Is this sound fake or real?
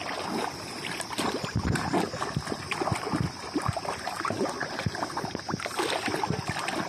real